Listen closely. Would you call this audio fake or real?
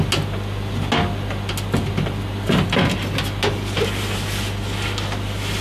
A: real